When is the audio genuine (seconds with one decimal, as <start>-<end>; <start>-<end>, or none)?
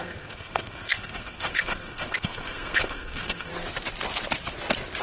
3.5-5.0